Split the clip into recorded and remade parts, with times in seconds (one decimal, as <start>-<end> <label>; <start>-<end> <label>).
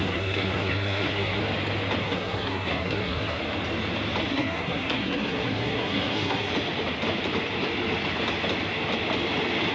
0.0-1.4 remade; 1.4-2.0 recorded; 2.0-3.4 remade; 3.4-4.3 recorded; 4.3-6.5 remade; 6.5-9.7 recorded